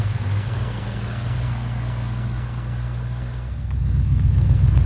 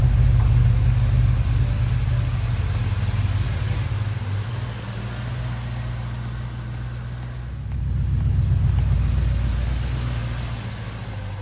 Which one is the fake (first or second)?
first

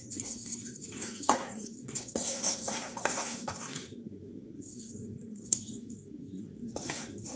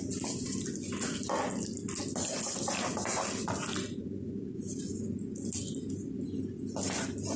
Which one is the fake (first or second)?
first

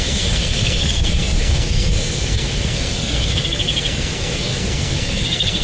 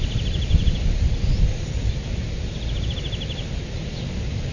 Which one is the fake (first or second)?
first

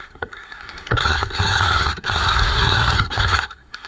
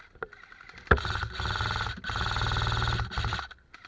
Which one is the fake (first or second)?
first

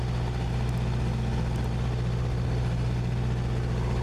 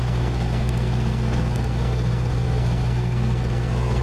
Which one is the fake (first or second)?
second